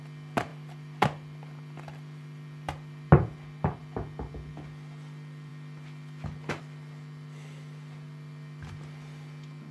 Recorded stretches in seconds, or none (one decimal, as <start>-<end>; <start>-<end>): 0.0-0.5; 3.1-9.7